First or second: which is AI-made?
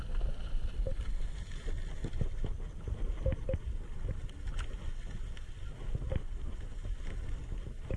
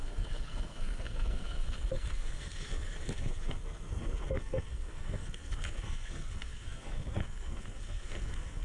second